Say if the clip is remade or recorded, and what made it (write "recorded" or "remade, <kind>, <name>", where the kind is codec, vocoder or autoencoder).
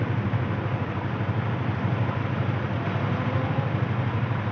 recorded